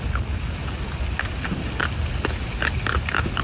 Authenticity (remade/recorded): recorded